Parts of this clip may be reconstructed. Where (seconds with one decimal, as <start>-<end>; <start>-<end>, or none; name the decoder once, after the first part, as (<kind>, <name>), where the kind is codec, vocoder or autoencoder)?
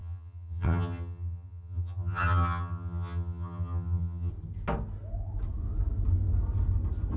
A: 0.0-4.3 (vocoder, HiFi-GAN)